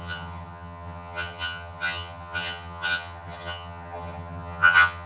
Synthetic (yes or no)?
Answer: yes